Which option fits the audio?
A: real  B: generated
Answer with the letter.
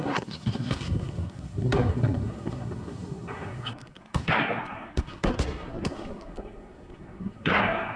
B